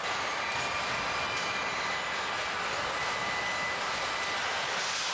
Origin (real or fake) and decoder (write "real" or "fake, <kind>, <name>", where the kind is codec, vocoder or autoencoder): real